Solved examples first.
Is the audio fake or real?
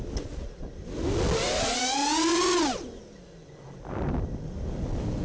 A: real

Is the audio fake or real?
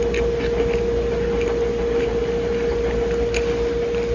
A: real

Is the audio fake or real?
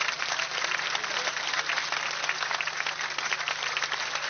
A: real